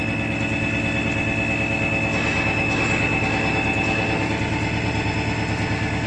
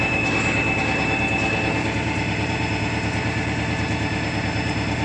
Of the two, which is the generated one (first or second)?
second